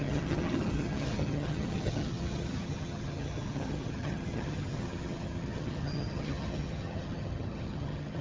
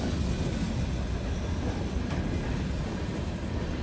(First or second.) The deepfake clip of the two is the first